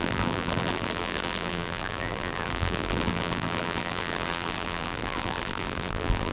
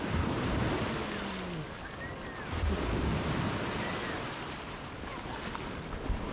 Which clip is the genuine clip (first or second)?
second